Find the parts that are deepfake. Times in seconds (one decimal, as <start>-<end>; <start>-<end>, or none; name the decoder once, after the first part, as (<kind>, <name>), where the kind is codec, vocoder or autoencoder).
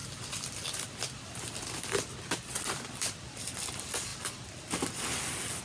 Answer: 0.0-3.4 (vocoder, BigVGAN v2)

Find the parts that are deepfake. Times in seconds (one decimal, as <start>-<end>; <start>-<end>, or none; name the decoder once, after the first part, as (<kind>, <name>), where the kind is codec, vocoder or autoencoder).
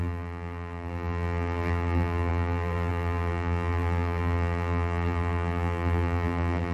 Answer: 0.0-6.7 (vocoder, BigVGAN v2)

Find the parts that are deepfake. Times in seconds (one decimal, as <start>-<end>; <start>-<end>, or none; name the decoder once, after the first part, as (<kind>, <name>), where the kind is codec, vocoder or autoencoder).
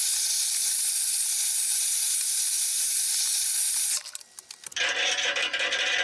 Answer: none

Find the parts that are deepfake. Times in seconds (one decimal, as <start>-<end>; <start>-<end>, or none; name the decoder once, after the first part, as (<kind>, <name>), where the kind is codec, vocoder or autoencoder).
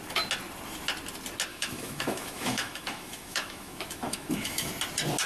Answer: 1.5-4.7 (autoencoder, DAC-VAE)